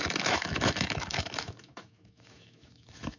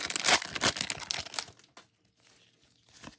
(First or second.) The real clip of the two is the second